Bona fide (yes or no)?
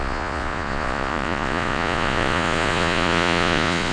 no